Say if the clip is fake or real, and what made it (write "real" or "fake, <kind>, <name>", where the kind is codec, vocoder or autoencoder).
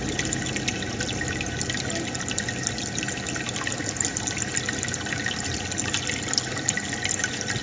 real